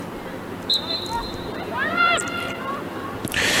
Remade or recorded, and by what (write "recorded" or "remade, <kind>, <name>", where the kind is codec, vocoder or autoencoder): recorded